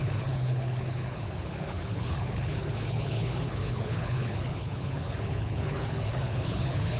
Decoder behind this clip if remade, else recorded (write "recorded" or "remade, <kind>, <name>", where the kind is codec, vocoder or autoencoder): remade, codec, HILCodec